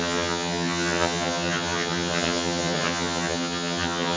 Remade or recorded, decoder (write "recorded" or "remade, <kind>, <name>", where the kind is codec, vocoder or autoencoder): remade, vocoder, HiFi-GAN